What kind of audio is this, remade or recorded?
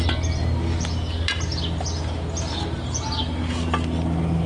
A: recorded